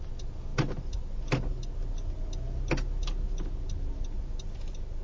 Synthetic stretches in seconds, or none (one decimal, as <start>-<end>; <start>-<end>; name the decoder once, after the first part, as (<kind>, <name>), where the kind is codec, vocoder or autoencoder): none